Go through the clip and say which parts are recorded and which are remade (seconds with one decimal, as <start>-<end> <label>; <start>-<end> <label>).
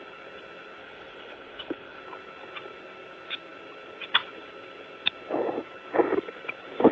0.0-0.8 recorded; 0.8-2.0 remade; 2.0-6.9 recorded